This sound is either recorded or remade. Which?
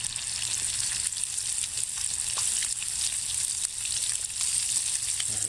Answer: recorded